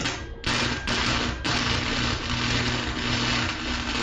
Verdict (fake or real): real